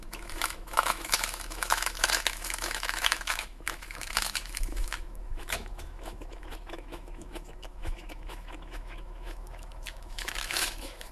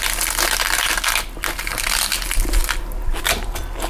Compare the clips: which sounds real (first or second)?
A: second